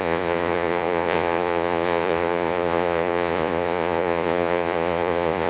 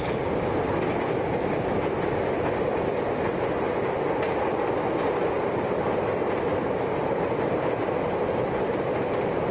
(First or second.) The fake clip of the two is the first